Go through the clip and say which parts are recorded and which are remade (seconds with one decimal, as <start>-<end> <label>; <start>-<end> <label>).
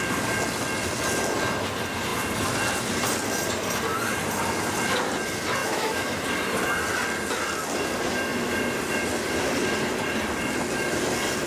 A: 0.0-5.6 recorded; 5.6-6.2 remade; 6.2-11.5 recorded